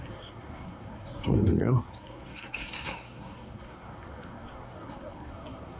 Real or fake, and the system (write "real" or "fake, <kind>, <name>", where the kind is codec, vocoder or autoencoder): fake, codec, SNAC